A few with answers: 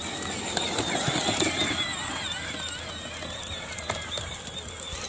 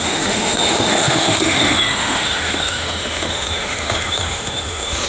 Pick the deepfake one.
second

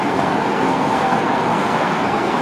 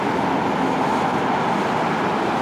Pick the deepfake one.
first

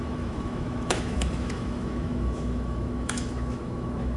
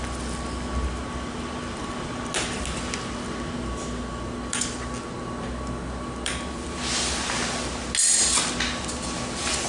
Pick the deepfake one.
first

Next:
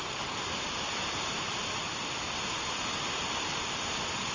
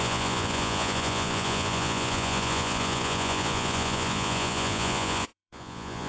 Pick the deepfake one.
second